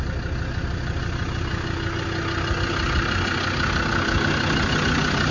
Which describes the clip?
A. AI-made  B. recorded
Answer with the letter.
B